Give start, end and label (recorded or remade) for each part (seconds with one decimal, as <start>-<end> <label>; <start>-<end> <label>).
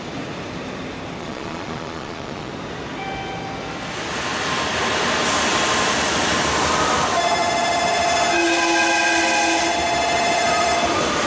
0.0-1.2 recorded; 1.2-2.5 remade; 2.5-11.3 recorded